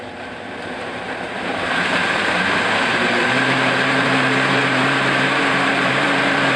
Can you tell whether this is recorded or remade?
remade